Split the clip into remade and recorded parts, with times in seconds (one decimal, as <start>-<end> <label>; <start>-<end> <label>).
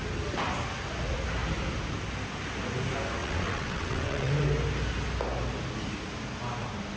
0.0-3.2 recorded; 3.2-4.3 remade; 4.3-7.0 recorded